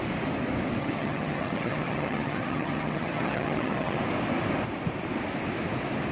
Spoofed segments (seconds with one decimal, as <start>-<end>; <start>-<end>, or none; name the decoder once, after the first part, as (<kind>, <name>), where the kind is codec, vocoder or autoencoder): 0.8-4.0 (vocoder, HiFi-GAN)